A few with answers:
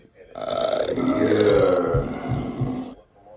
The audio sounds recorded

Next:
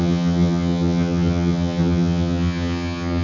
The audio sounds remade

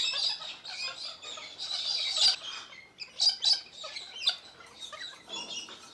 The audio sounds recorded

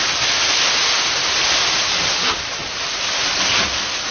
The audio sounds recorded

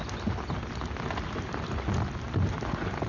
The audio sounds recorded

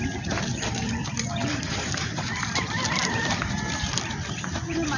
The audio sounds remade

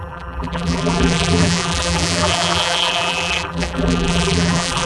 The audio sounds remade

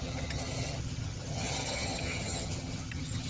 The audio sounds remade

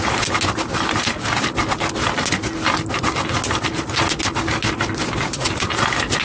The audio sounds recorded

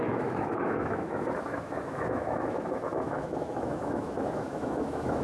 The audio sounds remade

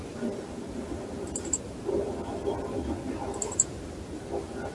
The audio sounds recorded